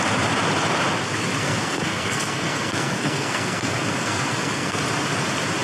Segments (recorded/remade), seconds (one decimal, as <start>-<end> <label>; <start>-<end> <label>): 0.0-1.4 recorded; 1.4-4.8 remade; 4.8-5.6 recorded